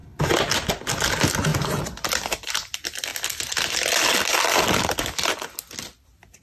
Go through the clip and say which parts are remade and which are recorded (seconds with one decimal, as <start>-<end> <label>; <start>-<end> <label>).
0.0-6.4 recorded